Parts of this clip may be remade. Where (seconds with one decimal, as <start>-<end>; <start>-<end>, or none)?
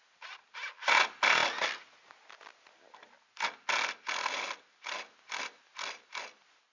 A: none